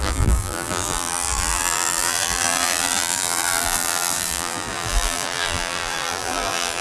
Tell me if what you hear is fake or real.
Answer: fake